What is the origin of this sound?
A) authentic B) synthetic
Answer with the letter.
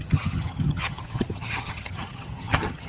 B